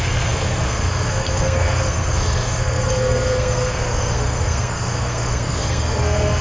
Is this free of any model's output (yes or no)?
no